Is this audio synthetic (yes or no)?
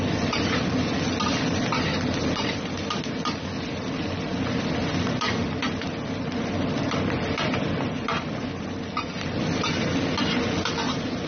no